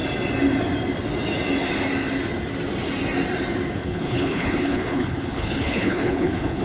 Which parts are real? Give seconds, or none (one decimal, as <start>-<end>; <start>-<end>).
0.0-3.8